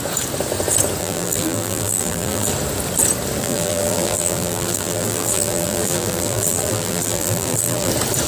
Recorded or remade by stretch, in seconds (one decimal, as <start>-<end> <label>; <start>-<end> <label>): 0.0-1.0 recorded; 1.0-2.5 remade; 2.5-3.4 recorded; 3.4-7.9 remade; 7.9-8.3 recorded